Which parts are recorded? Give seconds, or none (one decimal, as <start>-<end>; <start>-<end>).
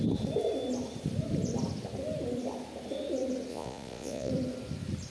0.0-3.5; 4.3-5.1